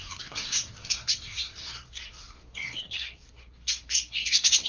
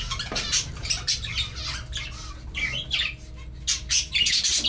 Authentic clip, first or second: second